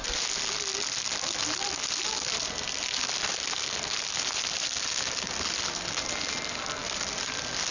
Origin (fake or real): real